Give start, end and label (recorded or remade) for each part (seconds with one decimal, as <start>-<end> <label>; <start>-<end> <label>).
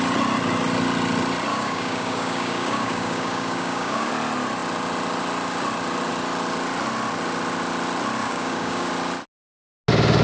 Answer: 0.0-1.5 recorded; 1.5-4.1 remade; 4.1-8.2 recorded; 8.2-8.9 remade; 8.9-10.2 recorded